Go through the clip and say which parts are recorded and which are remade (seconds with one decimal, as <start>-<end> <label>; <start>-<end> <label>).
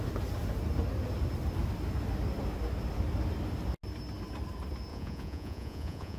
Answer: 0.0-4.9 recorded; 4.9-6.2 remade